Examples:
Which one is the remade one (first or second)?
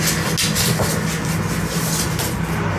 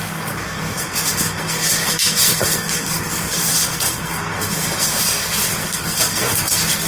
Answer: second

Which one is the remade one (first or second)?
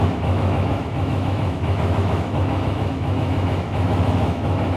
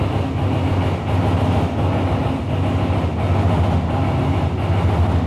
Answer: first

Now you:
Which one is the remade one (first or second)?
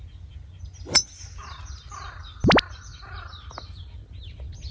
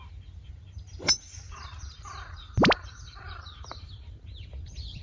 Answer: second